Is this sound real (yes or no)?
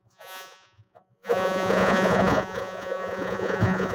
no